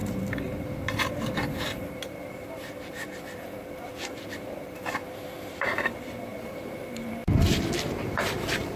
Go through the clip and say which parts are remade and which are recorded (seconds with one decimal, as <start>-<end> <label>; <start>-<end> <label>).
0.0-5.0 remade; 5.0-5.5 recorded; 5.5-8.8 remade